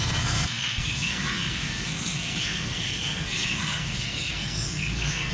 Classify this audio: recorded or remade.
remade